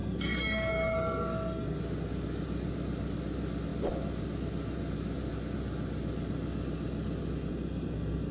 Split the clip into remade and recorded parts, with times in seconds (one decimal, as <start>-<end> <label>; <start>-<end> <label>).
0.0-1.8 remade; 1.8-7.5 recorded; 7.5-8.3 remade